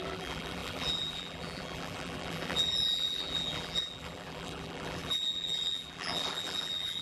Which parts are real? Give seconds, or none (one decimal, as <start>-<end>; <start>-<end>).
none